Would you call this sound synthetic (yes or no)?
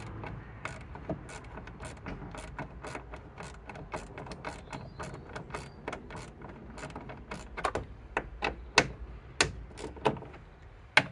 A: no